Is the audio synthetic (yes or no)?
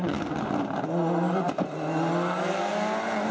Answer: no